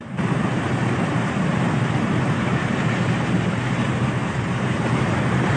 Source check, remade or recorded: remade